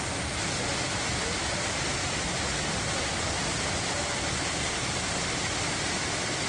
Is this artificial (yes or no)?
no